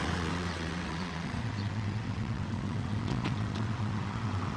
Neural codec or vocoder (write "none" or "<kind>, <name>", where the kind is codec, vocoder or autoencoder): vocoder, WaveNeXt